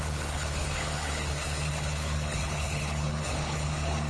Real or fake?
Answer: fake